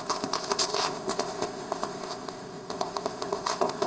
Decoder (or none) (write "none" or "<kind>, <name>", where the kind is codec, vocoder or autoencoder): codec, ZipCodec